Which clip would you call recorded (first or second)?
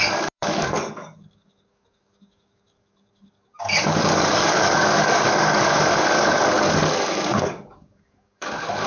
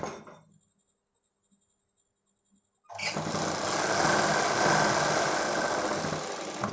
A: second